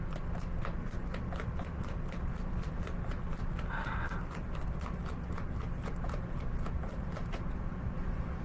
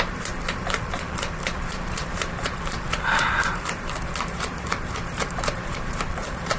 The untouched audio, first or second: first